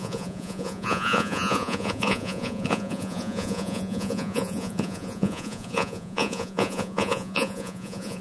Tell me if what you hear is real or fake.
fake